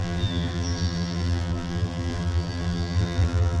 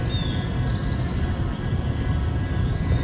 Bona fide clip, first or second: second